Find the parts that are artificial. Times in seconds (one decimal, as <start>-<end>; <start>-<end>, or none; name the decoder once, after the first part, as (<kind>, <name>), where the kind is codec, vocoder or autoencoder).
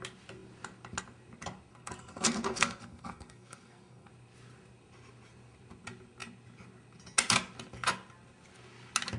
1.7-4.1 (codec, SNAC)